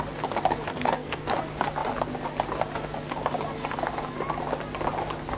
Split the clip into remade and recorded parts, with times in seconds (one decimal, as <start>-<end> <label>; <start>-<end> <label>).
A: 0.0-0.7 recorded; 0.7-1.3 remade; 1.3-5.4 recorded